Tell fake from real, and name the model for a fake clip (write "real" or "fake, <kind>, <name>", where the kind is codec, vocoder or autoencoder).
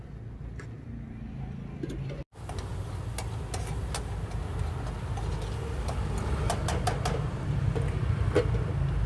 real